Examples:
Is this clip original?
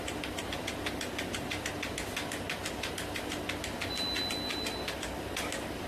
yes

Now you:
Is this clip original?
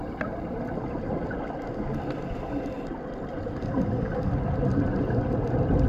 yes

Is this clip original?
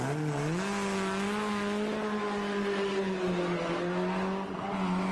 yes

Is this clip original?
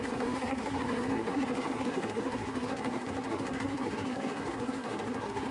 no